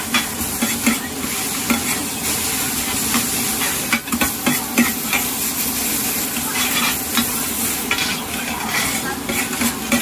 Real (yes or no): yes